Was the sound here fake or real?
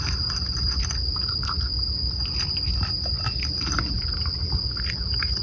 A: real